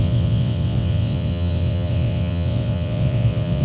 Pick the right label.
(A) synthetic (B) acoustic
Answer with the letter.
A